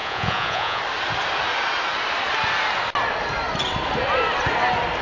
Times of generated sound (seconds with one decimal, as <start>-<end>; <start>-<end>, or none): 0.0-0.8